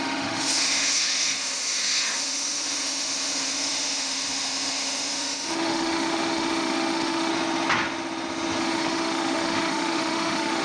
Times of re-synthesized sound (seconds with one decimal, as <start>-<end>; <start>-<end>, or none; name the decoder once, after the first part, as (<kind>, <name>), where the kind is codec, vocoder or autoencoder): 0.0-7.3 (autoencoder, DAC-VAE); 8.6-10.6